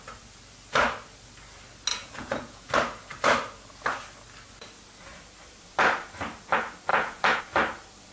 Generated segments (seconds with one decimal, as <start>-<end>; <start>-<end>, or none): 1.9-2.7; 6.9-7.4